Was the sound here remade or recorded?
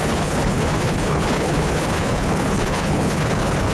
remade